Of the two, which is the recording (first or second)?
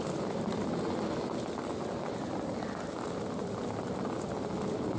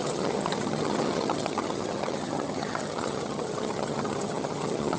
first